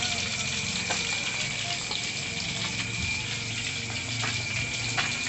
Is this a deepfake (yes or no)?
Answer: no